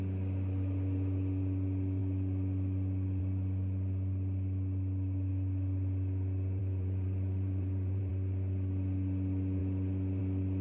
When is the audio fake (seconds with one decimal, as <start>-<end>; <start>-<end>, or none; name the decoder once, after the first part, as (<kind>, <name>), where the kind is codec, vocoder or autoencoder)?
6.6-8.1 (vocoder, BigVGAN v2)